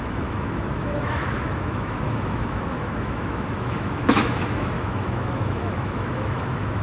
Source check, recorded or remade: remade